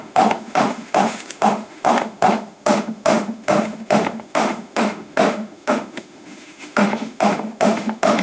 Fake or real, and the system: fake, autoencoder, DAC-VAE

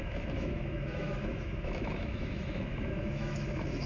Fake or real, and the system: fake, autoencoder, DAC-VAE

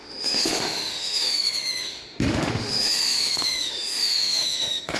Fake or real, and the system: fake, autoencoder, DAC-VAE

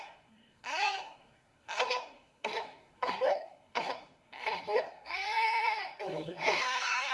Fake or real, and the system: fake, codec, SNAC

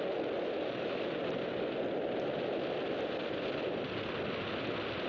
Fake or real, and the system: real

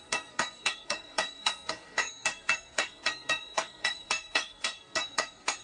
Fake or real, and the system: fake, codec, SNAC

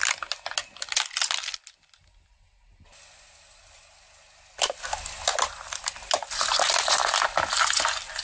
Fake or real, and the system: real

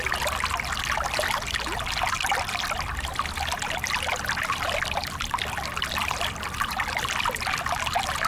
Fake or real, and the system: real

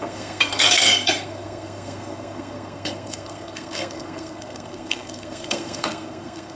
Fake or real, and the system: fake, codec, SNAC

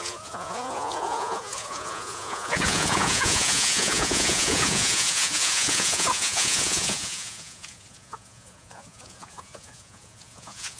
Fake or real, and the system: fake, vocoder, Vocos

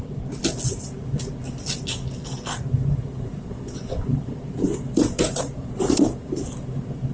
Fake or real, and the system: real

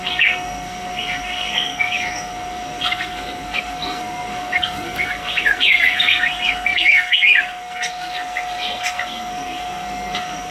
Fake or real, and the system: fake, codec, SNAC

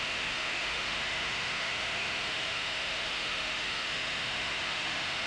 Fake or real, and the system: fake, autoencoder, DAC-VAE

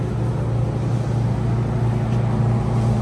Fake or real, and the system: real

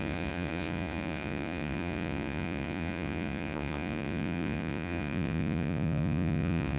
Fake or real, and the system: fake, vocoder, Vocos